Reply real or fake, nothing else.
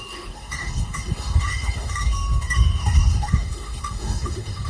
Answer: fake